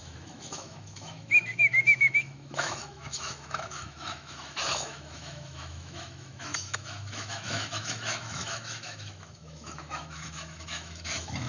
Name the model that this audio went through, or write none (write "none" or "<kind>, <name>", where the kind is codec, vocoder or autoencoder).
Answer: autoencoder, DAC-VAE